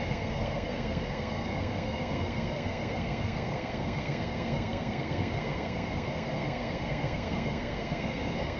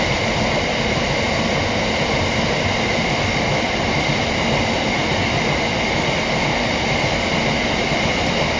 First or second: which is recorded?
second